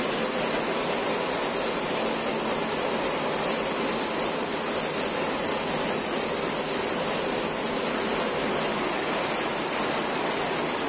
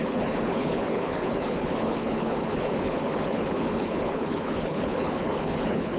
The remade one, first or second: second